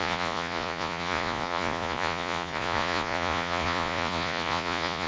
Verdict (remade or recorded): remade